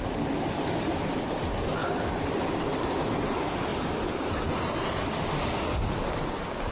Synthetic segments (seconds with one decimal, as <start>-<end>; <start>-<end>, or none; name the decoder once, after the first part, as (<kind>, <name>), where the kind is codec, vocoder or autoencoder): none